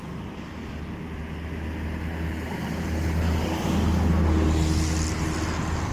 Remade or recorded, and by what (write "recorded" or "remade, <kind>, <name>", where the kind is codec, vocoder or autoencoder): recorded